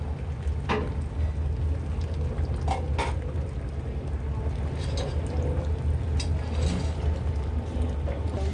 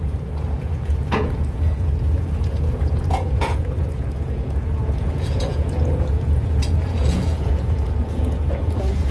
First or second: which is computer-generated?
second